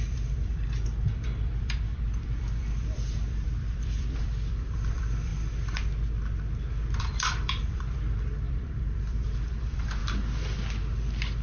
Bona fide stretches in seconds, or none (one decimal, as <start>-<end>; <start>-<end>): 5.3-7.0; 10.0-11.4